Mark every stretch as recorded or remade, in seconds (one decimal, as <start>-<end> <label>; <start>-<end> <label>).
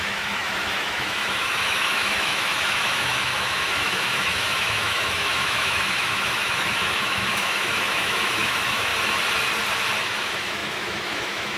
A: 0.0-8.9 remade; 8.9-10.0 recorded; 10.0-11.6 remade